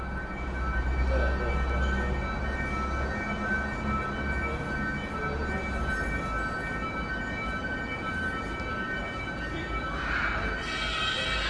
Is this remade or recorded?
recorded